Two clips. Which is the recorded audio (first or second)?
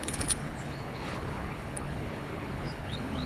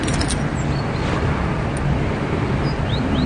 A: second